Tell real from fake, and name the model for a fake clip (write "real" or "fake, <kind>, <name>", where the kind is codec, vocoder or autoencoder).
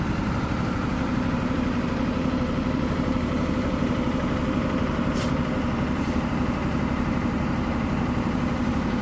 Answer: fake, vocoder, BigVGAN v2